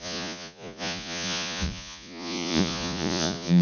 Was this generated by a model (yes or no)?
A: yes